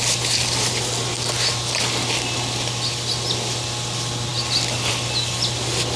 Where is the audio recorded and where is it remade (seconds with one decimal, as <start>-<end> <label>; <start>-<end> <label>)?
0.0-6.0 recorded